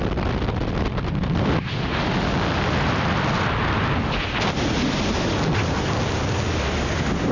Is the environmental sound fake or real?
real